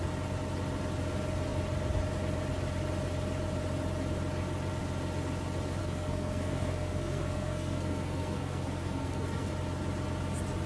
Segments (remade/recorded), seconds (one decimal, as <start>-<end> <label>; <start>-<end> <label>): 0.0-5.8 recorded; 5.8-9.5 remade; 9.5-10.7 recorded